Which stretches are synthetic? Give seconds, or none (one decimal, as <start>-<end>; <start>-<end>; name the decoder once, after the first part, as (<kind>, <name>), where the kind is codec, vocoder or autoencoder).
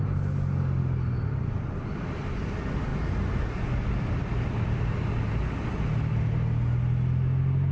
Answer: none